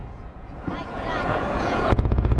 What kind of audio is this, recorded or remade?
remade